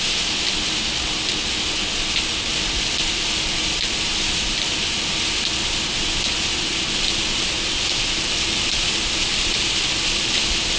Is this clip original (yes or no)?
yes